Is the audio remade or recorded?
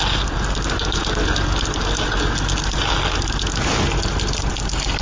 recorded